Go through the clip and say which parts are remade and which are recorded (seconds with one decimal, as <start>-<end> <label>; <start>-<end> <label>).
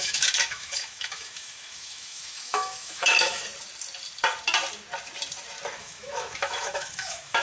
0.0-3.4 remade; 3.4-5.8 recorded; 5.8-7.4 remade